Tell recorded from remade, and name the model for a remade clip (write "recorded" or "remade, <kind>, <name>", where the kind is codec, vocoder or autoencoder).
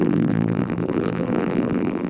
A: remade, vocoder, BigVGAN v2